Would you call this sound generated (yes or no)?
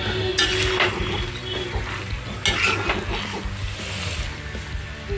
no